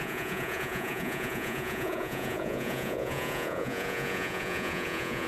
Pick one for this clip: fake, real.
fake